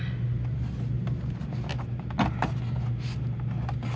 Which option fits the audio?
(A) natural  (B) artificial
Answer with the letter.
A